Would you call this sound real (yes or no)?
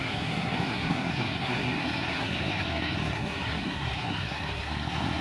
no